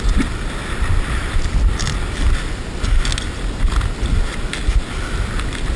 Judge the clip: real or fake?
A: real